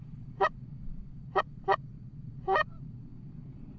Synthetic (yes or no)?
yes